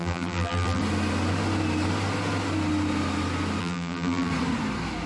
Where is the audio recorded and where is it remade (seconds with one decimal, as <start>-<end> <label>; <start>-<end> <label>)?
0.0-0.8 remade; 0.8-3.6 recorded; 3.6-4.3 remade; 4.3-5.1 recorded